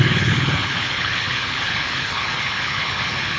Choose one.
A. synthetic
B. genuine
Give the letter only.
A